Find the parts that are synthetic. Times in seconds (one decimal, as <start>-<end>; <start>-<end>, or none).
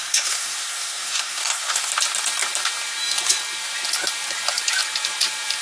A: 0.0-1.9